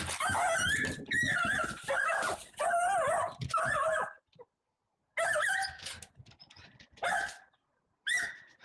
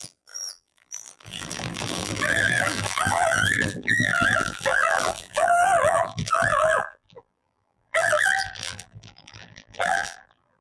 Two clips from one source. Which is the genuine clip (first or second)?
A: first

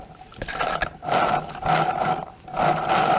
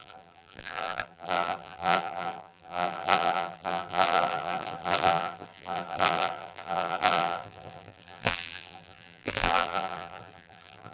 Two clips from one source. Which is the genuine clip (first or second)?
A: first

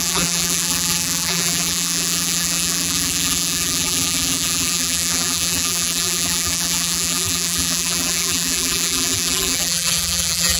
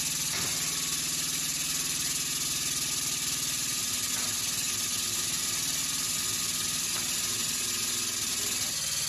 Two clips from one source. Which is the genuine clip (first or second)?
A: second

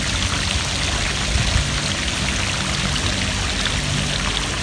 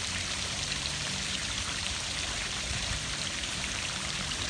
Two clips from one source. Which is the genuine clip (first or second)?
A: first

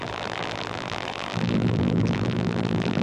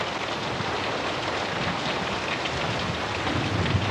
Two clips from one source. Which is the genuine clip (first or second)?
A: second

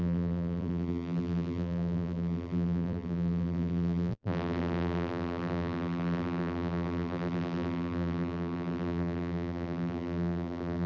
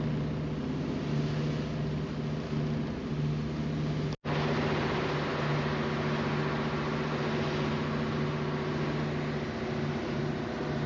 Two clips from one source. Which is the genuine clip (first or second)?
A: second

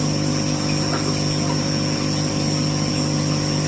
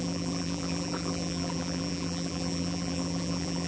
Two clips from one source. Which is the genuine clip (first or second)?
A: first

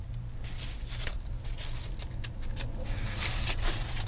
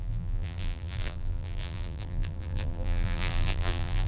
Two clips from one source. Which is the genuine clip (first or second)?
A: first